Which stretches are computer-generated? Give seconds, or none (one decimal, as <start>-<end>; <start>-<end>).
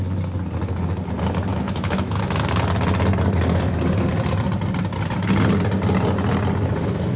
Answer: 1.5-2.2